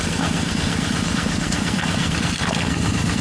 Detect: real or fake fake